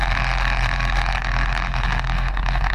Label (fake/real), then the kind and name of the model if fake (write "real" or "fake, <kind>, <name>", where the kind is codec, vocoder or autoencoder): fake, autoencoder, DAC-VAE